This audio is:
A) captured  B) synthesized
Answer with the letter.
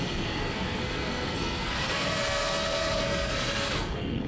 B